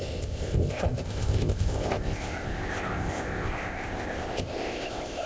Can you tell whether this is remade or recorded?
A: remade